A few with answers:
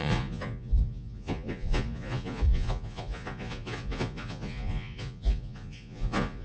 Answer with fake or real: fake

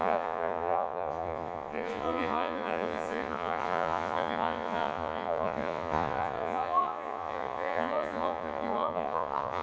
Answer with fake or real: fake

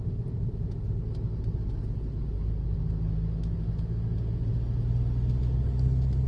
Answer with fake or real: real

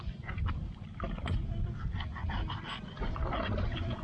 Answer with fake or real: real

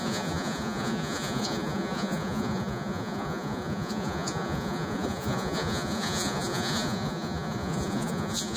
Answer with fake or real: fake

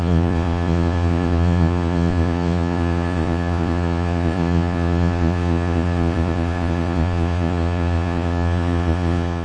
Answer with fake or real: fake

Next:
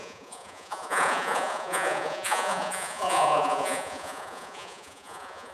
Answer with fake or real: fake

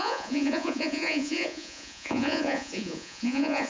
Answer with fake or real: fake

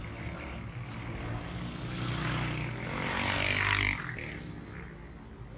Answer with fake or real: real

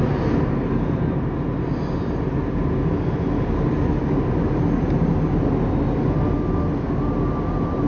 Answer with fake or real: real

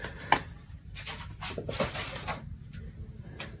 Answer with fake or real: real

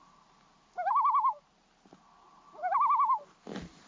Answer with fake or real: real